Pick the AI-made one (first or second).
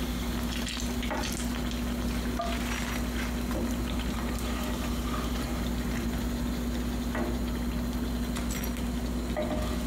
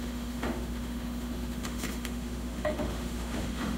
second